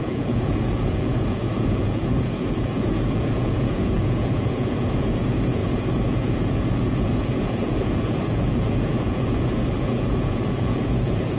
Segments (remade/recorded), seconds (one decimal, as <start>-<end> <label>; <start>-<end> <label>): 0.0-11.4 remade